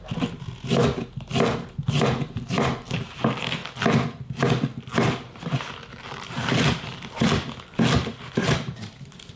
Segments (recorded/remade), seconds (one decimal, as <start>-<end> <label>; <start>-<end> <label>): 0.0-0.8 remade; 0.8-1.5 recorded; 1.5-3.6 remade; 3.6-5.9 recorded; 5.9-7.3 remade; 7.3-8.1 recorded; 8.1-9.4 remade

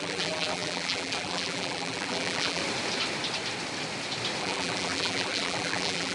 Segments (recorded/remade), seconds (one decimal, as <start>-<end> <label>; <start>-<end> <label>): 0.0-2.6 remade; 2.6-4.4 recorded; 4.4-6.1 remade

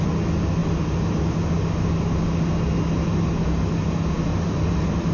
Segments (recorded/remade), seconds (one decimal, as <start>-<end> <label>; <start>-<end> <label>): 0.0-4.3 recorded; 4.3-5.1 remade